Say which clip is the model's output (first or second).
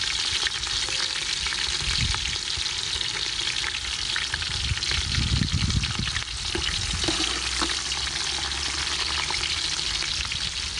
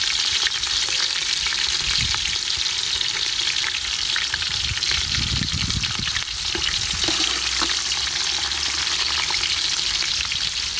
second